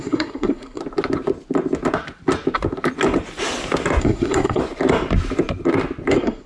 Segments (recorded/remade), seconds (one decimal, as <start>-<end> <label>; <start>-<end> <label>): 0.0-0.8 remade; 0.8-4.0 recorded; 4.0-4.6 remade; 4.6-6.1 recorded; 6.1-6.5 remade